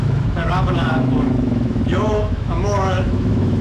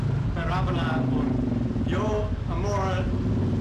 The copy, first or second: first